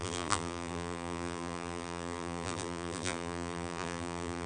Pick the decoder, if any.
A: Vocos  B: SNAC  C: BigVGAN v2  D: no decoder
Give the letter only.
C